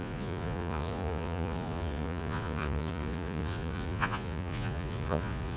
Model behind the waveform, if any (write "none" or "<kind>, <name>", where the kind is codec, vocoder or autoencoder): vocoder, Vocos